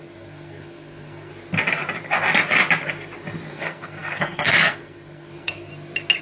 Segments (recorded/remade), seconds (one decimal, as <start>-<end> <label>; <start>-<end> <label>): 0.0-1.3 remade; 1.3-3.5 recorded; 3.5-5.7 remade; 5.7-6.2 recorded